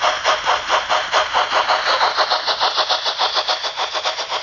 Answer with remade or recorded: recorded